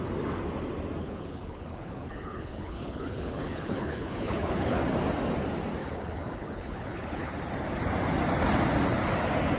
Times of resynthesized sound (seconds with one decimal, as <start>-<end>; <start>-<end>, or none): 1.0-4.8; 5.8-7.4